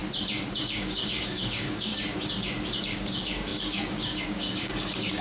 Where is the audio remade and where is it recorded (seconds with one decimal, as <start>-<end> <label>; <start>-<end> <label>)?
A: 0.0-0.6 recorded; 0.6-1.9 remade; 1.9-2.8 recorded; 2.8-5.2 remade